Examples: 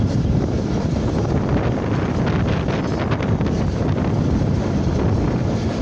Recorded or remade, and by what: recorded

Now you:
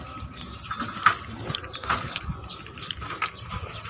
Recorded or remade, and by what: recorded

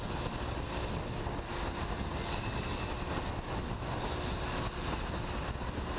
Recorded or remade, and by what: recorded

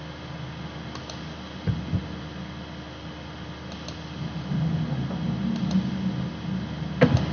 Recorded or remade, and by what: recorded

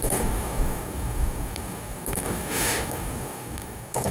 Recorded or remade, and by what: remade, codec, DAC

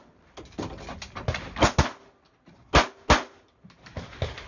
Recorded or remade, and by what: recorded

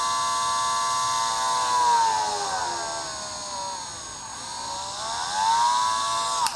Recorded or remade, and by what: recorded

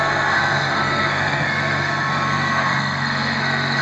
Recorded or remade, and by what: remade, codec, SNAC